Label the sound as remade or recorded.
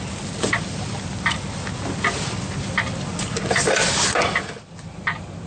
recorded